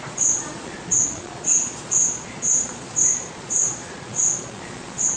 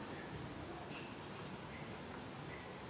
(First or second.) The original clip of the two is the second